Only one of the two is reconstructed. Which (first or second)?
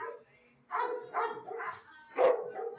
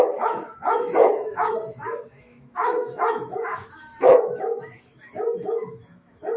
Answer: second